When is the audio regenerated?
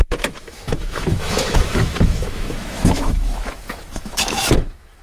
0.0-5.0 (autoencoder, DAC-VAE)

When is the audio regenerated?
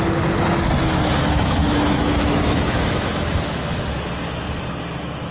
1.2-4.1 (autoencoder, DAC-VAE)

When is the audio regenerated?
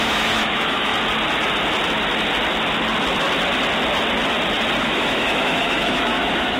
0.0-0.9 (autoencoder, DAC-VAE); 4.8-6.6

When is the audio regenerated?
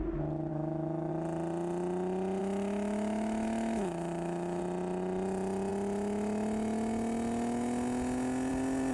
0.5-1.1 (autoencoder, DAC-VAE); 2.4-4.6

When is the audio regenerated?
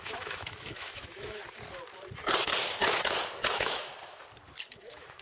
0.0-1.4 (autoencoder, DAC-VAE); 3.5-3.9; 4.7-5.2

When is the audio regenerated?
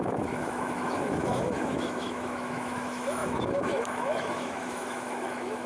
0.0-5.7 (autoencoder, DAC-VAE)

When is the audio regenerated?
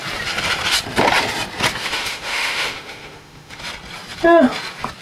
1.8-3.6 (autoencoder, DAC-VAE)